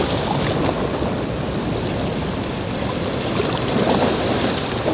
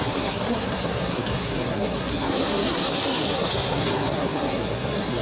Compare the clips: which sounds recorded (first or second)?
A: first